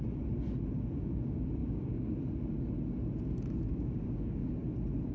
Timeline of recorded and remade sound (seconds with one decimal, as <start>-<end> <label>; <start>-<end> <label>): 0.0-1.6 recorded; 1.6-2.2 remade; 2.2-3.7 recorded; 3.7-4.6 remade; 4.6-5.1 recorded